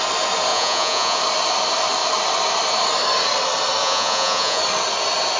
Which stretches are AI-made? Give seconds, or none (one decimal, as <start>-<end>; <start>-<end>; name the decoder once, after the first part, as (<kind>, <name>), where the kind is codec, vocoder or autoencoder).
0.5-1.2 (vocoder, Vocos); 3.8-4.6